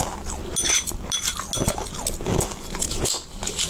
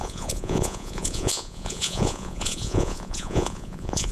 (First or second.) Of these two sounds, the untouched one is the first